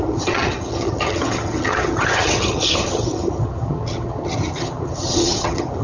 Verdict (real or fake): fake